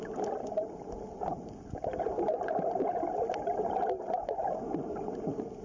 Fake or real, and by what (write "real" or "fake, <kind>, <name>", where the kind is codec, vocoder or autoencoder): real